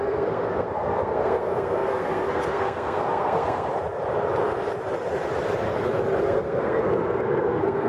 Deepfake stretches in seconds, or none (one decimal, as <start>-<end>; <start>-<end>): 0.0-3.7; 6.2-7.9